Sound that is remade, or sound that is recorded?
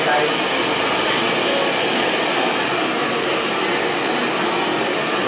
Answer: recorded